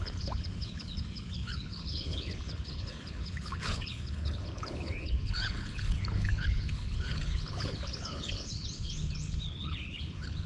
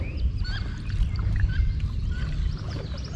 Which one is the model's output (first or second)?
first